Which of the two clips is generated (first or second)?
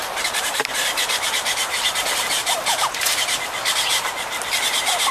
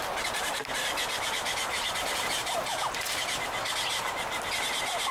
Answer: first